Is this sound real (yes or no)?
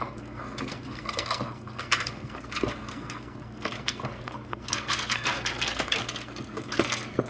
no